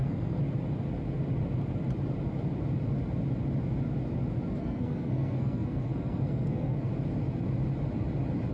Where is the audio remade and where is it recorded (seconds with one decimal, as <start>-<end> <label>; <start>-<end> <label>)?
0.0-0.4 remade; 0.4-4.6 recorded; 4.6-6.9 remade; 6.9-8.5 recorded